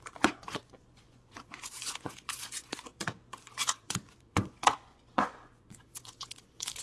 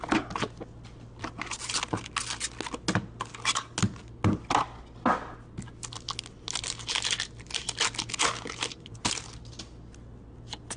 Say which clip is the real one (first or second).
second